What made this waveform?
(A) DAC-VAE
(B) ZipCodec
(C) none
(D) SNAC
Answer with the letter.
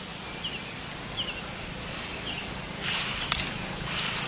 C